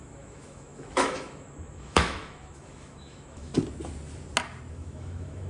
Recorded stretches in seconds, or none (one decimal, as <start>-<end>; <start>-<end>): 3.5-4.7